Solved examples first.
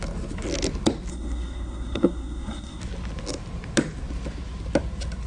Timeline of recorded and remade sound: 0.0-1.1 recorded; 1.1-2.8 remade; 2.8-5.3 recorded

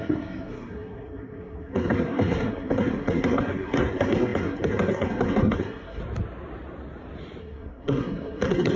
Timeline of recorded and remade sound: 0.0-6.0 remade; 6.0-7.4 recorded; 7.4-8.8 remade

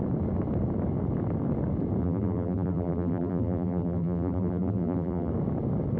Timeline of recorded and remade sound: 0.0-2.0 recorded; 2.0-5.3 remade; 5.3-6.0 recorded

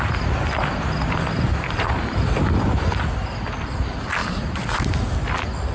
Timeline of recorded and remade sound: 0.0-1.5 recorded; 1.5-2.2 remade; 2.2-4.2 recorded; 4.2-4.9 remade; 4.9-5.7 recorded

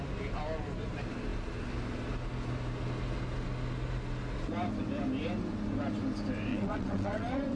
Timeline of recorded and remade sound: 0.0-6.5 recorded; 6.5-7.6 remade

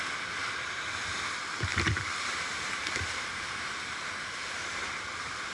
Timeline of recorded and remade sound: 0.0-1.7 recorded; 1.7-3.8 remade; 3.8-4.4 recorded; 4.4-5.1 remade; 5.1-5.5 recorded